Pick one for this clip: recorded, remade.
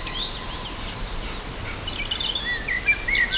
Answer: recorded